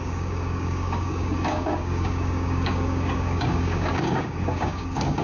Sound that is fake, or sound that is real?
fake